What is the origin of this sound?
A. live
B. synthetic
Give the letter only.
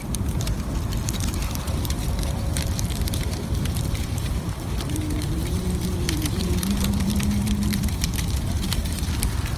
B